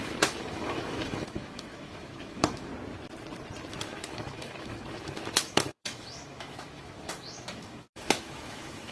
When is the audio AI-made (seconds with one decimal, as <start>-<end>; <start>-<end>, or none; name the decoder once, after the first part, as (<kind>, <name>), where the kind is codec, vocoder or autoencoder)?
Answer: 0.0-2.7 (autoencoder, DAC-VAE); 3.7-8.9